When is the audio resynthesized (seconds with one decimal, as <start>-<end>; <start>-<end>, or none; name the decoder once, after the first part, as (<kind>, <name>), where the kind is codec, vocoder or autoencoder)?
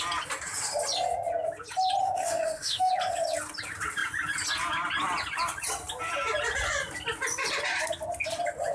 2.0-2.9 (autoencoder, DAC-VAE)